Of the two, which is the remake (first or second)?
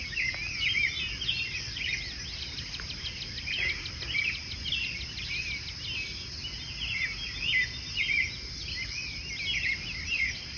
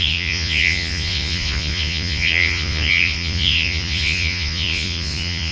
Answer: second